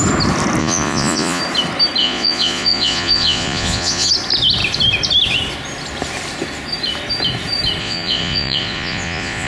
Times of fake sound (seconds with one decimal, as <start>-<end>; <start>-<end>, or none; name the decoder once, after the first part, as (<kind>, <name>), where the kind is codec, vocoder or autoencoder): 0.6-1.4 (vocoder, Vocos); 2.0-4.1; 7.8-9.5